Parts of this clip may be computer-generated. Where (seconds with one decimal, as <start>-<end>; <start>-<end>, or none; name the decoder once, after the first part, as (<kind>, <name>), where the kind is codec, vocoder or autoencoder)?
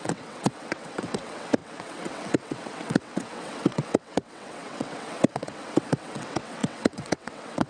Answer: 0.0-7.7 (vocoder, WaveNeXt)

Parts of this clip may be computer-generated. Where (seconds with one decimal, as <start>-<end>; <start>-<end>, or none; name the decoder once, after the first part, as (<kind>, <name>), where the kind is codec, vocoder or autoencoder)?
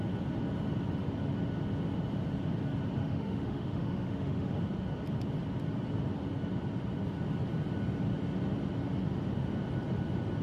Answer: 3.0-4.5 (autoencoder, DAC-VAE)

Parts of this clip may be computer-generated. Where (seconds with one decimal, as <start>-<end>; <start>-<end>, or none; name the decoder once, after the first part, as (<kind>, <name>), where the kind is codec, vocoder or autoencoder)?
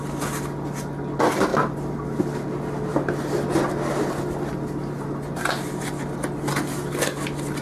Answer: none